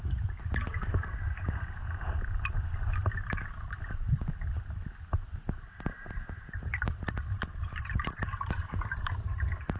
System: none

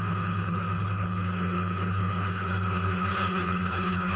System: codec, HILCodec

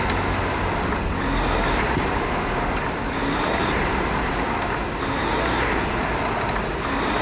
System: none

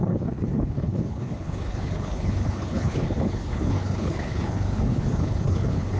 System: codec, HILCodec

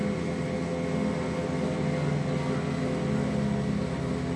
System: none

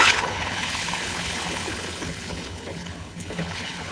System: codec, HILCodec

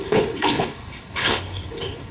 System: codec, HILCodec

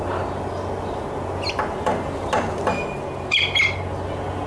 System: none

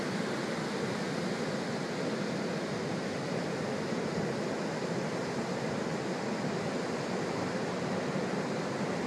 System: none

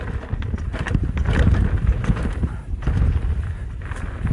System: none